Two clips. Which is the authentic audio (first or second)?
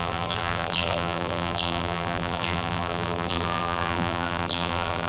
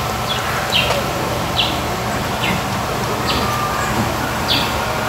second